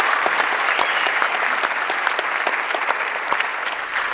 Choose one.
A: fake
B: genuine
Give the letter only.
B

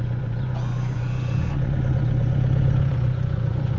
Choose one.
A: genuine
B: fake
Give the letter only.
B